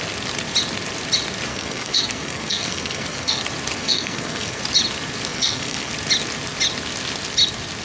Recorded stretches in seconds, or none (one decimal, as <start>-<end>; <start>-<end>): 0.0-1.5; 3.4-3.8; 4.6-5.3; 5.9-7.8